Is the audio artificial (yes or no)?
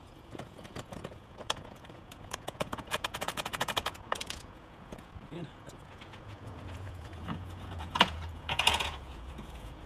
yes